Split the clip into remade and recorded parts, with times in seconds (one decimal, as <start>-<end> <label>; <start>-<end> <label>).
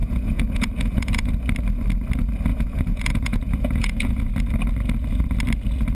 0.0-1.3 remade; 1.3-2.5 recorded; 2.5-4.2 remade; 4.2-5.9 recorded